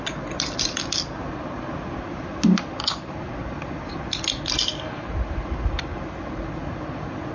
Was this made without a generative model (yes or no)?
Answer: yes